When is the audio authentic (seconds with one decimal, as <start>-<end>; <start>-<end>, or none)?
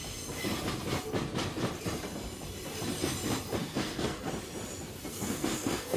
0.0-3.6; 4.3-5.0